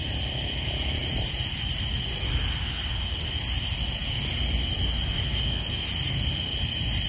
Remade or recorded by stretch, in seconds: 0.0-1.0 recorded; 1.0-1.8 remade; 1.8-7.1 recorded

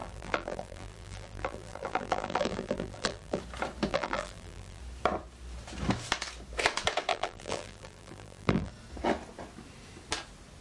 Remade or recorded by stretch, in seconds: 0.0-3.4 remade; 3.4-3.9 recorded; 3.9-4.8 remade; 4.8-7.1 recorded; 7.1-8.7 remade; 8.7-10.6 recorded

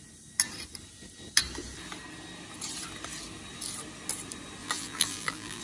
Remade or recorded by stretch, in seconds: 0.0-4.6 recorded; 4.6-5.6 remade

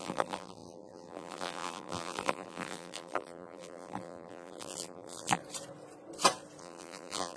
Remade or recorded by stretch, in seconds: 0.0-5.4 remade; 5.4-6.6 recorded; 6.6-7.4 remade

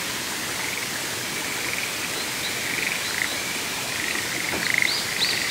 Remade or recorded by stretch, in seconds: 0.0-0.8 remade; 0.8-4.1 recorded; 4.1-5.5 remade